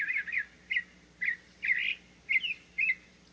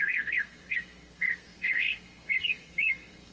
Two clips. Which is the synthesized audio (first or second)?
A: second